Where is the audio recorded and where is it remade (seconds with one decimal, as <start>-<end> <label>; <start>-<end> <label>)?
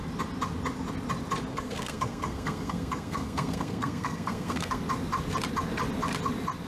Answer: 0.0-1.5 recorded; 1.5-4.8 remade; 4.8-6.7 recorded